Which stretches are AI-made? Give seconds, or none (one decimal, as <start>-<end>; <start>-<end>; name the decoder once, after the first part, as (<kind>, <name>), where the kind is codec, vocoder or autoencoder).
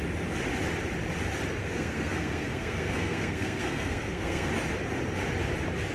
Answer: 1.6-4.5 (codec, SNAC)